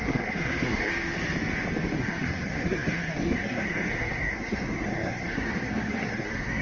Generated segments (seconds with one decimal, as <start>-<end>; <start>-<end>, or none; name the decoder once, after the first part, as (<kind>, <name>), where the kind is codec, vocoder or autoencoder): 0.0-0.9 (codec, SNAC); 1.9-6.6